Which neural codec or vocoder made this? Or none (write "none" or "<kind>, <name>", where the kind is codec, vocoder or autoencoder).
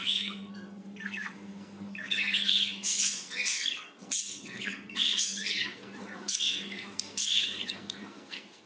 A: codec, SNAC